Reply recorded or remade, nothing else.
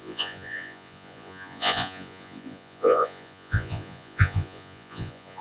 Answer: remade